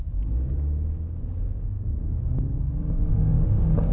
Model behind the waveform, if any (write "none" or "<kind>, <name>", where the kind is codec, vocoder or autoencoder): codec, DAC